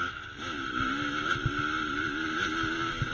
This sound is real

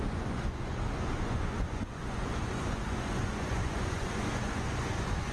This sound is fake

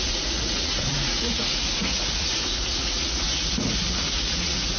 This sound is fake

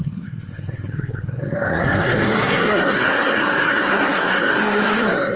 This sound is fake